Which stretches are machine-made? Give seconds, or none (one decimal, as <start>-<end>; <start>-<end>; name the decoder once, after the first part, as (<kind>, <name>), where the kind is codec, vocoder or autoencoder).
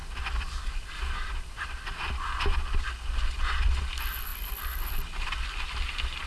none